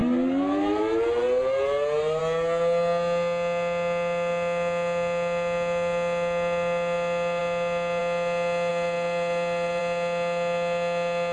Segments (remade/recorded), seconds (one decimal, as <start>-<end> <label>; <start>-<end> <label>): 0.0-2.2 remade; 2.2-8.7 recorded; 8.7-9.8 remade; 9.8-11.3 recorded